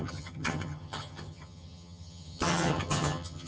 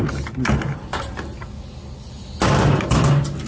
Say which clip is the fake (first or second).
first